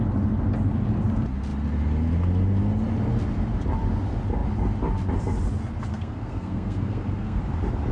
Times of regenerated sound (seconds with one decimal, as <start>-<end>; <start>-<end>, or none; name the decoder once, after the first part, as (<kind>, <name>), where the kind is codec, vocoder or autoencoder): 5.9-7.4 (codec, SNAC)